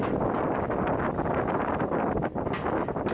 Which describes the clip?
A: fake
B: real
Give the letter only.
B